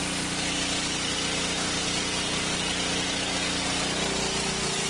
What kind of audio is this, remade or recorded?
recorded